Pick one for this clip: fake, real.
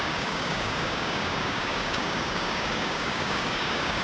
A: fake